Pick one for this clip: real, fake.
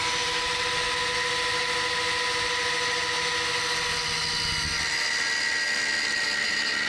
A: real